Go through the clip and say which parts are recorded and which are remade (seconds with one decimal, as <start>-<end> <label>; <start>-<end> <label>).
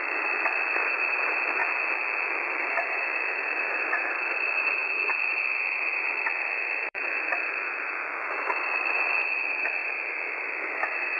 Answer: 0.0-1.6 remade; 1.6-2.5 recorded; 2.5-4.8 remade; 4.8-5.3 recorded; 5.3-11.2 remade